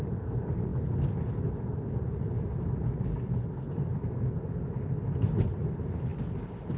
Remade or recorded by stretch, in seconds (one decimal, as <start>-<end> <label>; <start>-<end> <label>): 0.0-6.8 recorded